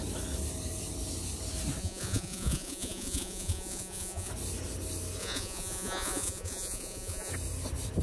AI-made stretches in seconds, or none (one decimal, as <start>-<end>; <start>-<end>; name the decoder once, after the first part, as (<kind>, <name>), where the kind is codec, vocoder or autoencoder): 1.8-4.3 (vocoder, Vocos); 5.2-7.3